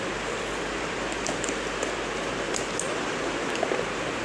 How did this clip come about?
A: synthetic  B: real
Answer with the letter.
B